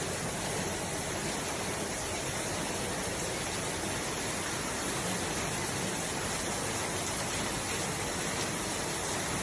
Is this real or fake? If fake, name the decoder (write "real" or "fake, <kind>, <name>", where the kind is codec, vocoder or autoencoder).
real